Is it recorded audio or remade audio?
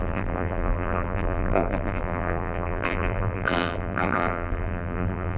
remade